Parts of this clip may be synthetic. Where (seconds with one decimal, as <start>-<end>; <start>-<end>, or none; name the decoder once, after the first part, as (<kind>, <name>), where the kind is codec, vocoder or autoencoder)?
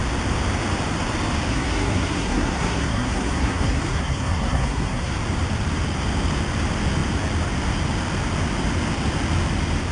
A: 1.5-5.1 (codec, SNAC)